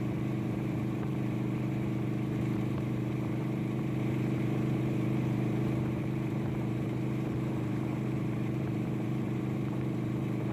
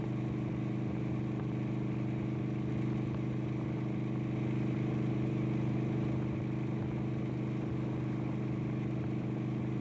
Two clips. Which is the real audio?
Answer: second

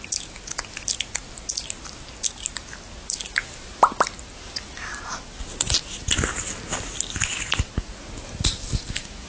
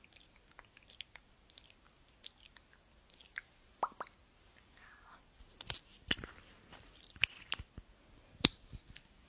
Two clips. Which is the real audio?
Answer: first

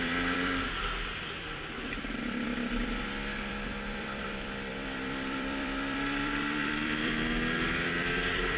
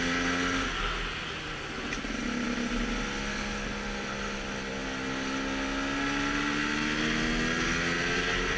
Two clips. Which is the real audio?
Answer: second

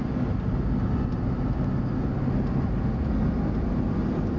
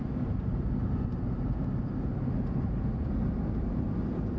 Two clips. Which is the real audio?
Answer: first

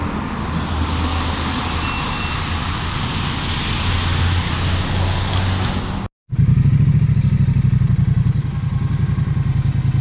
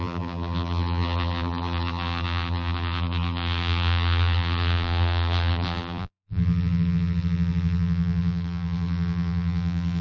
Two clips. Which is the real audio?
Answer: first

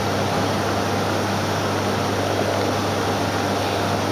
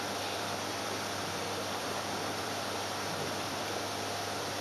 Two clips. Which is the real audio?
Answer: first